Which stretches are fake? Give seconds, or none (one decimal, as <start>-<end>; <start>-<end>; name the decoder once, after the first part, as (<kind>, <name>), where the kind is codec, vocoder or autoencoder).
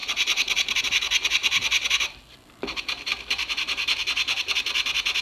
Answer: 0.0-0.8 (vocoder, BigVGAN v2); 1.4-4.5